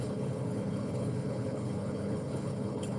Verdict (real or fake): fake